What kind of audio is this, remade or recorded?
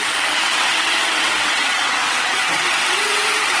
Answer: remade